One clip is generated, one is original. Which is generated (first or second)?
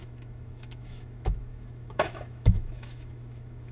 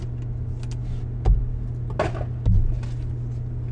first